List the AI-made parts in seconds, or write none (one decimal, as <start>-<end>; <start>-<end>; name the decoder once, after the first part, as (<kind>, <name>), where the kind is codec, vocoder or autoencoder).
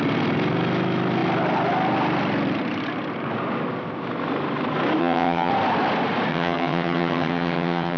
5.0-5.5 (vocoder, HiFi-GAN); 6.3-8.0